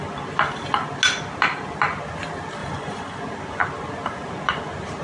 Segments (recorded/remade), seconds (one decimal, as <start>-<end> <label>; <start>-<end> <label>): 0.0-2.6 recorded; 2.6-3.2 remade; 3.2-5.0 recorded